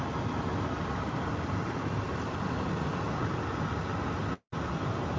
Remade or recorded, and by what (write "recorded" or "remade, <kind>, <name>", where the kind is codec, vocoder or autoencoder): recorded